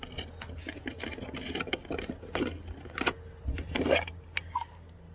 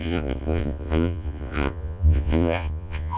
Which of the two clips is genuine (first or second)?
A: first